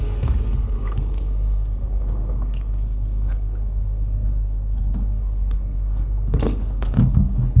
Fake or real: fake